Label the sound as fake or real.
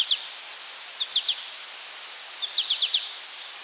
real